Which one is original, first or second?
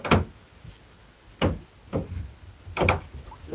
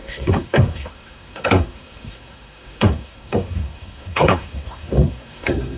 first